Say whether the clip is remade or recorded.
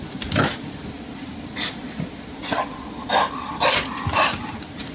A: recorded